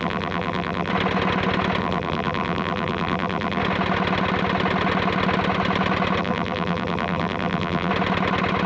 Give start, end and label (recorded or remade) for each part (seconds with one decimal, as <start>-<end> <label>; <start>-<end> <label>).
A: 0.0-0.9 remade; 0.9-1.8 recorded; 1.8-3.6 remade; 3.6-6.2 recorded; 6.2-7.9 remade; 7.9-8.7 recorded